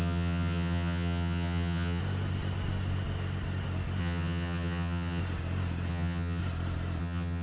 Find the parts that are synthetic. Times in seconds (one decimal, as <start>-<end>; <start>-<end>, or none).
0.0-2.0; 4.0-5.2; 5.9-6.4; 7.0-7.4